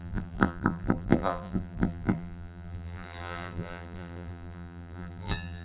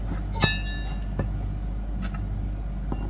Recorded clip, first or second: second